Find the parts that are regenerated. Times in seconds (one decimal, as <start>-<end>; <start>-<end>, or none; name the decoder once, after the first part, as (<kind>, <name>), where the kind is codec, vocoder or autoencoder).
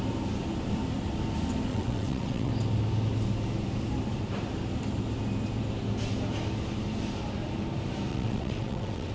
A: 1.7-2.5 (vocoder, WaveNeXt); 8.1-9.1